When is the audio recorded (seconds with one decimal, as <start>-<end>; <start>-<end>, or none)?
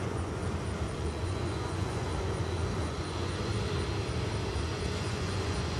0.4-0.9; 3.5-4.5